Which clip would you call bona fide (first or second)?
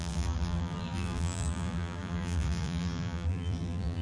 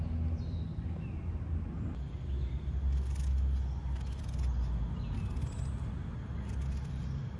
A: second